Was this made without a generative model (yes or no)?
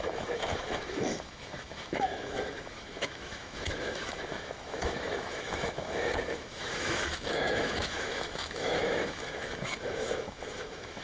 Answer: no